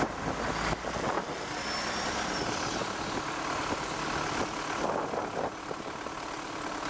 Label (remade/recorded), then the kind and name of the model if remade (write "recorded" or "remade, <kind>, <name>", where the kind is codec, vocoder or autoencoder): recorded